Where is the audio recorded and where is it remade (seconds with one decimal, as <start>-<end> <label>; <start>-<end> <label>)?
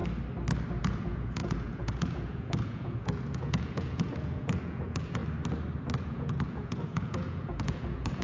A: 0.0-0.7 recorded; 0.7-5.2 remade; 5.2-6.0 recorded; 6.0-8.2 remade